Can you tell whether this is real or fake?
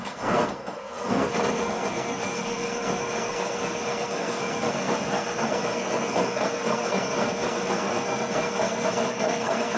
fake